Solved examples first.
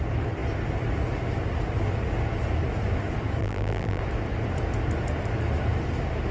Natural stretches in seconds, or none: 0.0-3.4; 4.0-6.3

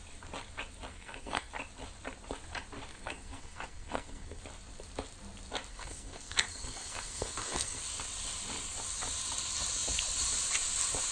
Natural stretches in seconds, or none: 0.0-0.9; 1.5-2.9; 4.4-5.7; 7.8-11.1

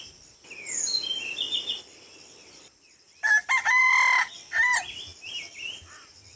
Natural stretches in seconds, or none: 0.0-1.2; 3.8-6.4

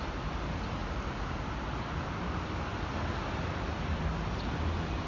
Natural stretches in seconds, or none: 0.0-5.1